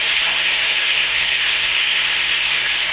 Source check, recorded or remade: remade